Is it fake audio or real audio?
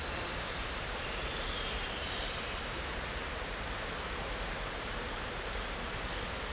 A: fake